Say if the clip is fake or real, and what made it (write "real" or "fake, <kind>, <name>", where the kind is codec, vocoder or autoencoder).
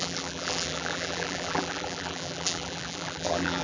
fake, vocoder, BigVGAN v2